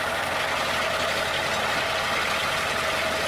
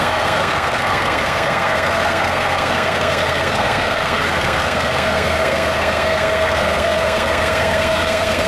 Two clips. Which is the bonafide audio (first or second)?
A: first